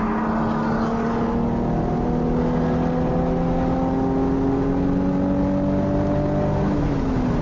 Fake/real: real